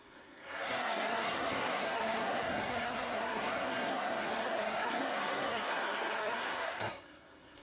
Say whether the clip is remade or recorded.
remade